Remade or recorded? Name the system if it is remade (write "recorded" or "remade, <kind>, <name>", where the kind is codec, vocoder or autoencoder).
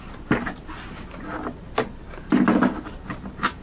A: recorded